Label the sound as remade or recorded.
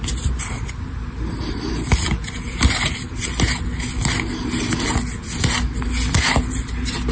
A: recorded